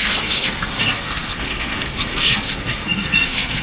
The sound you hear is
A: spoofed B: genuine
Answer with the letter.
A